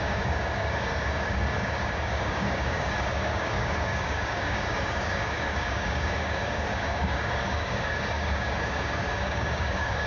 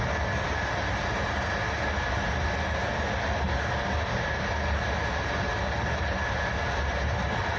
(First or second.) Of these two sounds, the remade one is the first